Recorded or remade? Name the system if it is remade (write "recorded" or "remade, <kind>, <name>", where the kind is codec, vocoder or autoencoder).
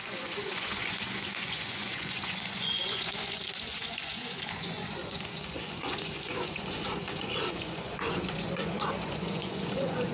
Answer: remade, vocoder, Vocos